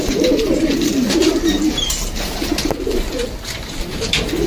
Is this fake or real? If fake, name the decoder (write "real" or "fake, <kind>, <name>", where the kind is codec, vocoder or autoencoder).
fake, vocoder, BigVGAN v2